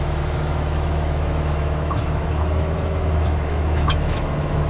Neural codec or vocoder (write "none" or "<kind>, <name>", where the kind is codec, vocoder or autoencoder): autoencoder, DAC-VAE